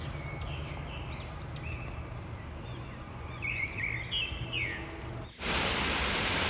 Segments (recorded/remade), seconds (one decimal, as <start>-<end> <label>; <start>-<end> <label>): 0.0-2.7 recorded; 2.7-3.8 remade; 3.8-6.5 recorded